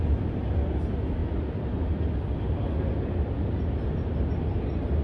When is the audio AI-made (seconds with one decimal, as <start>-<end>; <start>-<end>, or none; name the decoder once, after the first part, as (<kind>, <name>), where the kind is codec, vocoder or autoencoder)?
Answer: none